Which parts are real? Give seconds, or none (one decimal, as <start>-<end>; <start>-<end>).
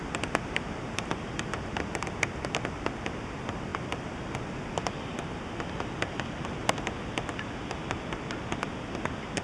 0.0-9.4